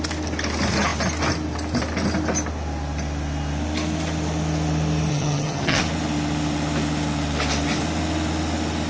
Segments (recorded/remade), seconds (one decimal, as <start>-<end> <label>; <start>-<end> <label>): 0.0-5.1 recorded; 5.1-5.8 remade; 5.8-8.9 recorded